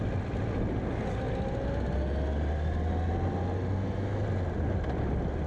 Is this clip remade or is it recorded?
recorded